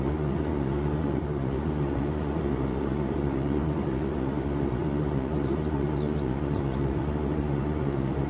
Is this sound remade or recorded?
remade